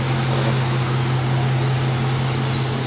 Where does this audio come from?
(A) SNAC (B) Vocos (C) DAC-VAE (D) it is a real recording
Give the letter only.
D